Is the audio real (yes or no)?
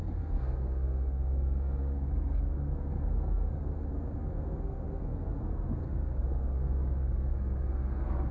no